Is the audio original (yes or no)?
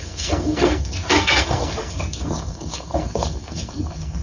no